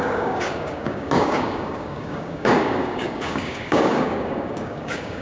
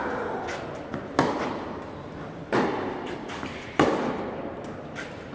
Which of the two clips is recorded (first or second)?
second